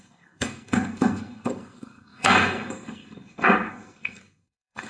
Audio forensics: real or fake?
fake